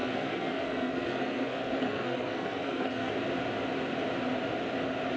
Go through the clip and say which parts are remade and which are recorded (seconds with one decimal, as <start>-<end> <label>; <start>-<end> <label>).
0.0-3.1 remade; 3.1-5.2 recorded